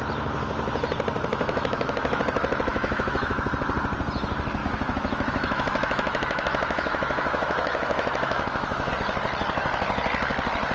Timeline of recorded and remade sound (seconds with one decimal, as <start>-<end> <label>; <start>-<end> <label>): 0.0-1.3 recorded; 1.3-2.2 remade; 2.2-2.7 recorded; 2.7-3.5 remade; 3.5-4.6 recorded; 4.6-8.9 remade; 8.9-10.7 recorded